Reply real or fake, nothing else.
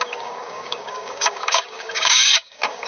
fake